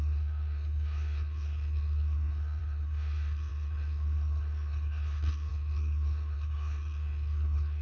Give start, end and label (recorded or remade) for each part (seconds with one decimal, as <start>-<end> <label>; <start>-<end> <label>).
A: 0.0-7.8 remade

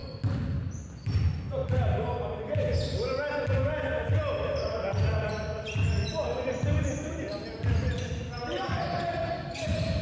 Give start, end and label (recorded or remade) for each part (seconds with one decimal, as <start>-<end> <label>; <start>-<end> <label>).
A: 0.0-7.8 recorded; 7.8-9.0 remade; 9.0-10.0 recorded

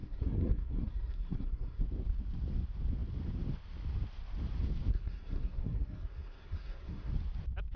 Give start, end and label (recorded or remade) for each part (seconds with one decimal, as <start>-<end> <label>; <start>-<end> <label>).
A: 0.0-1.8 remade; 1.8-4.9 recorded; 4.9-7.1 remade; 7.1-7.8 recorded

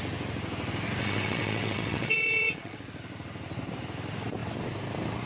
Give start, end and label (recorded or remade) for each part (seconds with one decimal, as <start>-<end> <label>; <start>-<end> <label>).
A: 0.0-1.0 recorded; 1.0-2.8 remade; 2.8-5.3 recorded

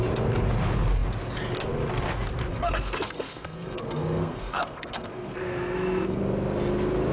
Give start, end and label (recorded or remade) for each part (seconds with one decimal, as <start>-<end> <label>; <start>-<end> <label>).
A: 0.0-2.5 recorded; 2.5-6.2 remade; 6.2-7.1 recorded

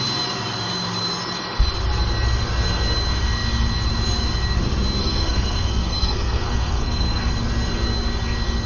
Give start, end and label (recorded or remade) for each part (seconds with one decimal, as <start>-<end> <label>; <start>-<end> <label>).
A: 0.0-5.0 recorded; 5.0-7.3 remade; 7.3-8.7 recorded

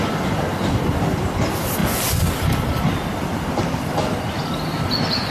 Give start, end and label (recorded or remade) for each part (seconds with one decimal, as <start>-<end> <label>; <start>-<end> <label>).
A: 0.0-1.8 remade; 1.8-2.7 recorded; 2.7-5.3 remade